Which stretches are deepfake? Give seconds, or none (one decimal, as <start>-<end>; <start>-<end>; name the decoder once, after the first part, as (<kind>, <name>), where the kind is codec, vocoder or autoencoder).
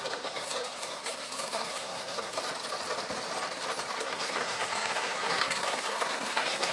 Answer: 0.0-2.4 (codec, SNAC); 4.0-6.7